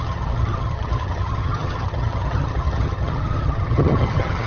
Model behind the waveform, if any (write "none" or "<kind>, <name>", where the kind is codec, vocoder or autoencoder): vocoder, HiFi-GAN